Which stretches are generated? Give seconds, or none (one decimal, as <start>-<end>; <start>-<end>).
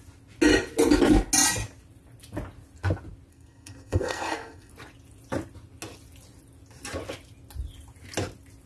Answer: 3.3-4.7